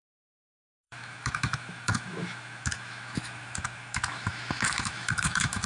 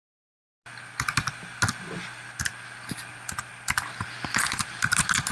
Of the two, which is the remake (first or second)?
first